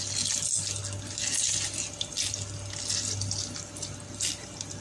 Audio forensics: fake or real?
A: real